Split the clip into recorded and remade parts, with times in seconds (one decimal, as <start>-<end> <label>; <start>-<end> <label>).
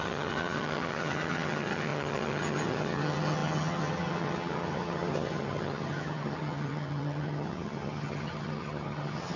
0.0-9.4 remade